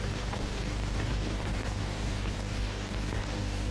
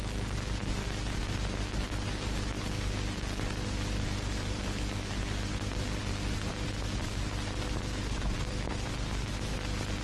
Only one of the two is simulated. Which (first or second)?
first